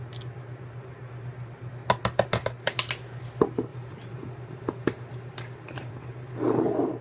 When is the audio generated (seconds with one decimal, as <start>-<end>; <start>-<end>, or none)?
3.7-5.9